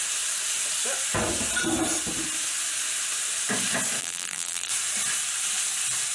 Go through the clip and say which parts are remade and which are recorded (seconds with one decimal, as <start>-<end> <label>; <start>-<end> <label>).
0.0-4.0 recorded; 4.0-4.7 remade; 4.7-6.1 recorded